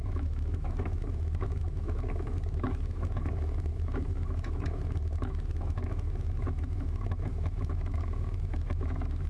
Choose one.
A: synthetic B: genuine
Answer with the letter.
A